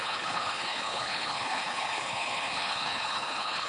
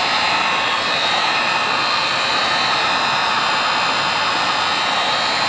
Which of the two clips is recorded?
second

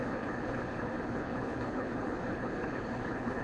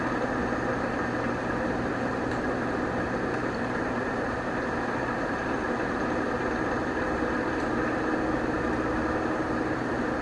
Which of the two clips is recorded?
second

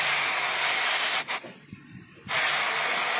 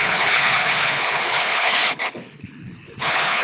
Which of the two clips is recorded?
first